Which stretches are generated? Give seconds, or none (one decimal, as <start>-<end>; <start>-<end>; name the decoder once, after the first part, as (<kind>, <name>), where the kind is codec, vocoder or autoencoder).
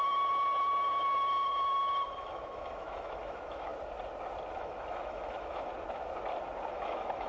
0.0-3.7 (autoencoder, DAC-VAE); 4.5-5.7; 6.7-7.3